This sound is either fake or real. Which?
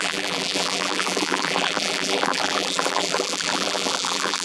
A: fake